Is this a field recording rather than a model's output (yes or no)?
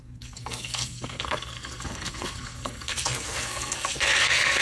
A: no